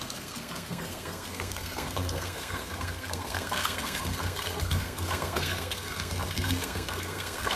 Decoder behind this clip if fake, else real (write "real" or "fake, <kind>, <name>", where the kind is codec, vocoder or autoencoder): fake, codec, SNAC